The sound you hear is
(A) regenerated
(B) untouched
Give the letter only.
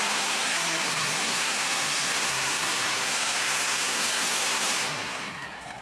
A